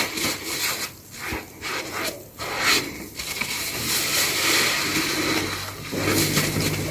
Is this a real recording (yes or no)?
yes